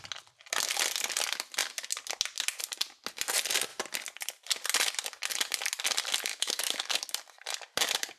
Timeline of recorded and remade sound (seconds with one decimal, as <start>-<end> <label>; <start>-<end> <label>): 0.0-6.3 recorded; 6.3-7.0 remade; 7.0-8.2 recorded